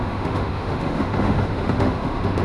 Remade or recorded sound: remade